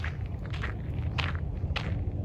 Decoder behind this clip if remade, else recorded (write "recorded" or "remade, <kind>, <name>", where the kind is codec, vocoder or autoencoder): recorded